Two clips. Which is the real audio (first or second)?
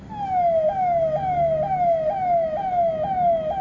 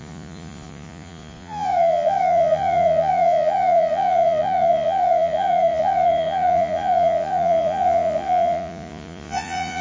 first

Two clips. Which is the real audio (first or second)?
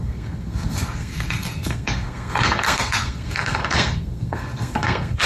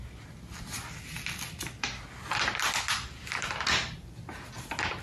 second